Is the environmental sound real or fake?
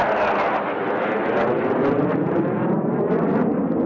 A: real